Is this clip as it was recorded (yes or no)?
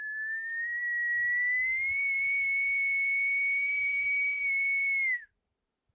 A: yes